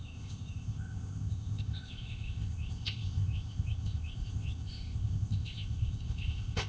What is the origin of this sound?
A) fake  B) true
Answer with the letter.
A